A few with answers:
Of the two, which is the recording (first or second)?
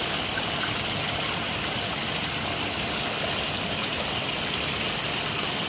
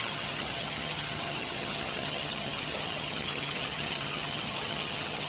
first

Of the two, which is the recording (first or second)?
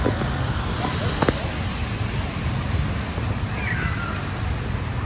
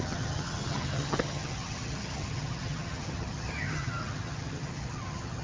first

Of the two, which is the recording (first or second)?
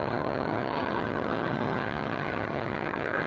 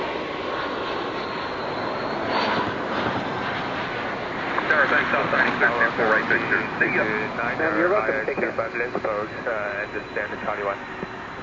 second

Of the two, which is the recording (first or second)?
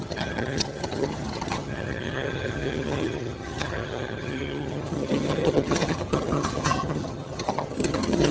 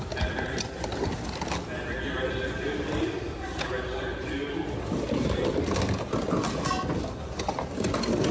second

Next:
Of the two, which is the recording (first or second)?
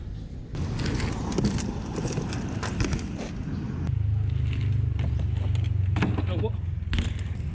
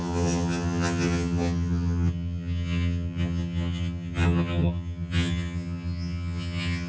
first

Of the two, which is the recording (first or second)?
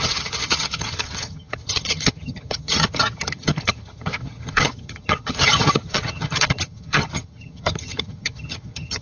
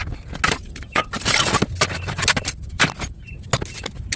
second